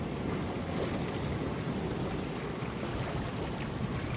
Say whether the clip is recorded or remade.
recorded